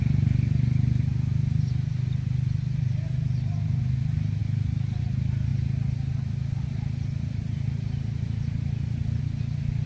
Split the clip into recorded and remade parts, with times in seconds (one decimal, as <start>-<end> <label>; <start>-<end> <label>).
0.0-9.9 recorded